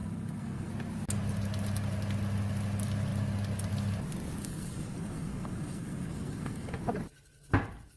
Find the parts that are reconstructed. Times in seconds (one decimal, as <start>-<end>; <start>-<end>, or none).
0.0-0.7; 4.4-6.8